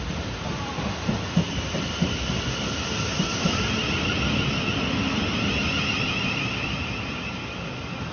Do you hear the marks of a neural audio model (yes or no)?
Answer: no